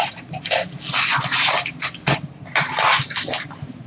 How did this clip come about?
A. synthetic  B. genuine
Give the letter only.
B